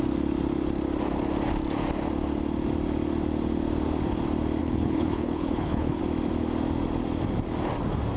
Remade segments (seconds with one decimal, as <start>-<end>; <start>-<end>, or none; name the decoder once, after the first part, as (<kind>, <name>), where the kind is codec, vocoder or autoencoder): 4.6-6.0 (codec, HILCodec)